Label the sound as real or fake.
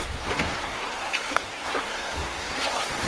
fake